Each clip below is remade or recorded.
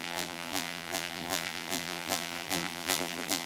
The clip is remade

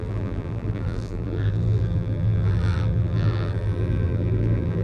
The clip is remade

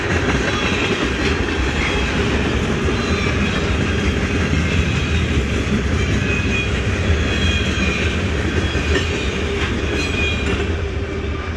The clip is recorded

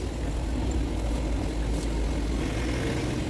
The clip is recorded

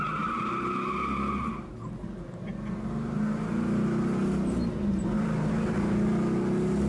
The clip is recorded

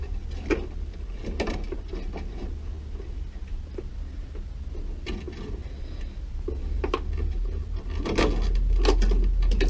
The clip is recorded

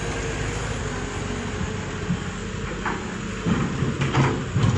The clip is recorded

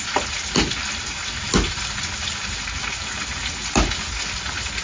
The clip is recorded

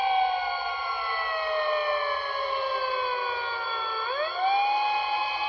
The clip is recorded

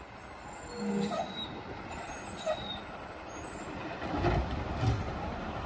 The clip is recorded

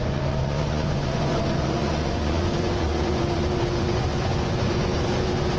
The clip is remade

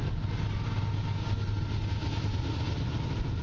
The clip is recorded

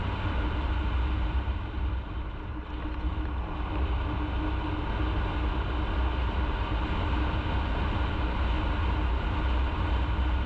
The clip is recorded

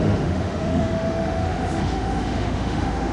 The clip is remade